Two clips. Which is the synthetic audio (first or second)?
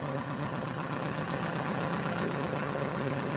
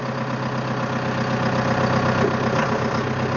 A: first